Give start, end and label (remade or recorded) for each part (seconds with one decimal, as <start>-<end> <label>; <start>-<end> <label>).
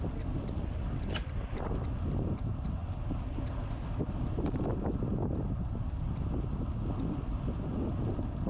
0.0-8.5 recorded